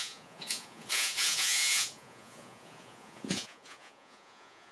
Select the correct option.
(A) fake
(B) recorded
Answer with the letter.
A